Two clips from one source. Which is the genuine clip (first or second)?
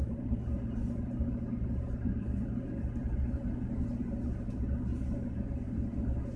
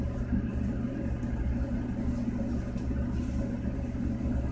second